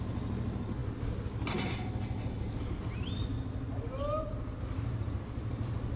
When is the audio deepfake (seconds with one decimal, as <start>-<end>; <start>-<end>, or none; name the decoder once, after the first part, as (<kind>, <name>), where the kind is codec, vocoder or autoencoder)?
none

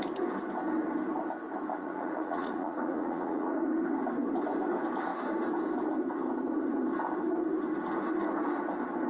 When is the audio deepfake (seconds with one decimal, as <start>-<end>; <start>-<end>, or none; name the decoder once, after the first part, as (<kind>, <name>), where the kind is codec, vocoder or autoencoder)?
1.7-3.5 (vocoder, Vocos)